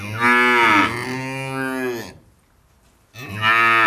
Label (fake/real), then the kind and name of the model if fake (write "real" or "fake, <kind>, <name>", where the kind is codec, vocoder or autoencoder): real